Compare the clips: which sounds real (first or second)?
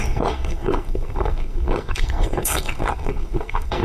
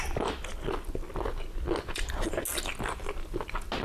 second